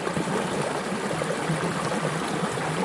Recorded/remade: recorded